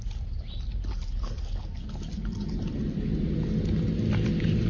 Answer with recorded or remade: recorded